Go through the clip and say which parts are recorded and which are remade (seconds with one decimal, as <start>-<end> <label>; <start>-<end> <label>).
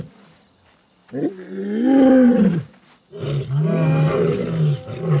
0.0-5.2 recorded